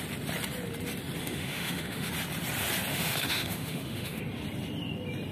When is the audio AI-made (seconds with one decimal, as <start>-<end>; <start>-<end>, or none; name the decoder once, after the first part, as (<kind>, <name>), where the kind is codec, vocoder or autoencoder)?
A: 1.2-2.1 (autoencoder, DAC-VAE); 2.9-4.2